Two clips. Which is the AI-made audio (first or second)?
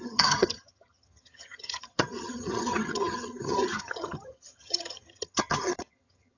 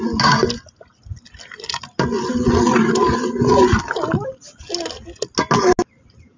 first